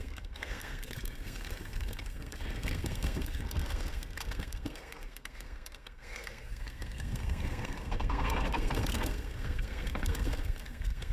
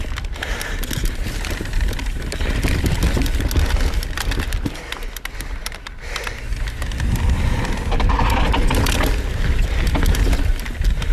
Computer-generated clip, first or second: first